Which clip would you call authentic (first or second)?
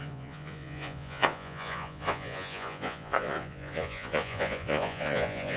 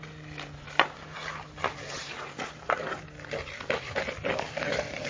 second